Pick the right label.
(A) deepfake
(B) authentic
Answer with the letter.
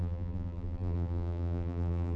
A